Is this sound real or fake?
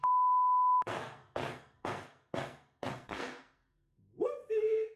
fake